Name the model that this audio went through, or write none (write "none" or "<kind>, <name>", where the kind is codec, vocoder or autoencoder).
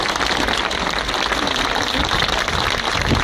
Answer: vocoder, BigVGAN v2